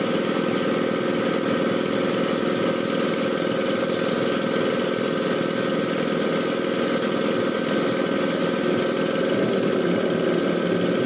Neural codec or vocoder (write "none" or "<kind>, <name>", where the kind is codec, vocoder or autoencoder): none